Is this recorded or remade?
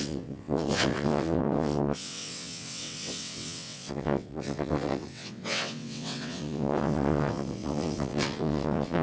remade